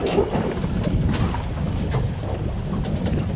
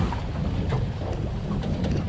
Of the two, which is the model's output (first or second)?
first